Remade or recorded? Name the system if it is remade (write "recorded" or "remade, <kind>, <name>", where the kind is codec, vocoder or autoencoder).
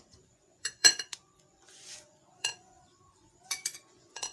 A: remade, vocoder, Vocos